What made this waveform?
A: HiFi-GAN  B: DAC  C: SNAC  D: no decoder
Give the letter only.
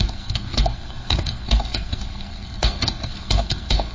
C